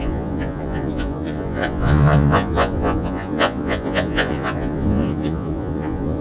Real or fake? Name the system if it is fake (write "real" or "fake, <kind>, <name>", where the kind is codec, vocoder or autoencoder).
fake, vocoder, Vocos